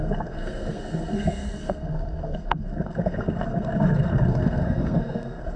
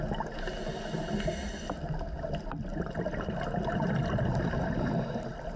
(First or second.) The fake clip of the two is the first